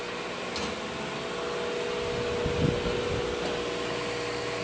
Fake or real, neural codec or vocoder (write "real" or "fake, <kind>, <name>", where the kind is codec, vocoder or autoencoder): real